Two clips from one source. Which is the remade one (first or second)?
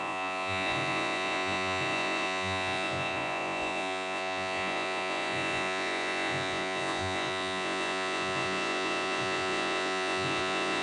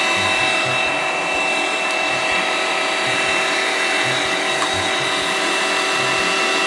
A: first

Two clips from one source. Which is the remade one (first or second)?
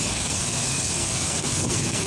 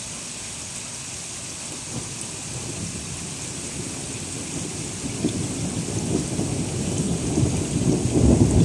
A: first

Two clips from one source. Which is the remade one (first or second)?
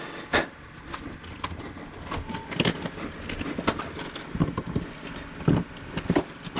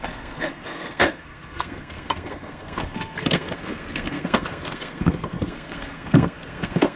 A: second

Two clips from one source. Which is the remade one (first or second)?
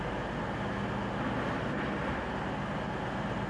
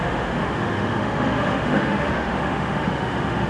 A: second